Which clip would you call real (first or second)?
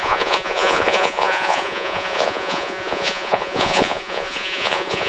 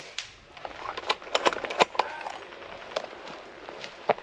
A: second